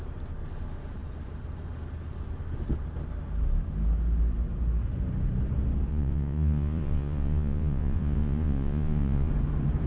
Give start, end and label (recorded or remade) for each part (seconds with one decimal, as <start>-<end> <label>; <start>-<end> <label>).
0.0-5.9 recorded; 5.9-9.3 remade; 9.3-9.9 recorded